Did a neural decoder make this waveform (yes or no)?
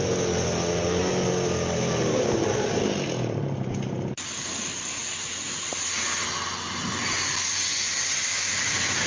no